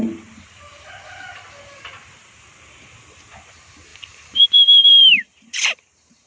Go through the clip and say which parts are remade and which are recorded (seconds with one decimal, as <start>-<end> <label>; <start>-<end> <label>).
0.0-3.9 recorded; 3.9-6.3 remade